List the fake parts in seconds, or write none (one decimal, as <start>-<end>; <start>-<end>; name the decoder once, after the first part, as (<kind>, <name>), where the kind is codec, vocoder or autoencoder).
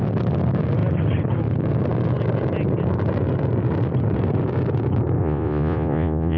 5.2-6.4 (vocoder, Vocos)